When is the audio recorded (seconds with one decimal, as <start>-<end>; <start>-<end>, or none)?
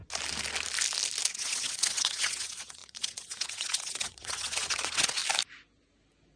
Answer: 0.0-1.3; 5.2-6.4